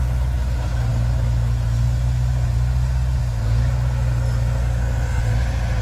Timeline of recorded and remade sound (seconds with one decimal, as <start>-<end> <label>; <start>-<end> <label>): 0.0-4.6 recorded; 4.6-5.2 remade; 5.2-5.8 recorded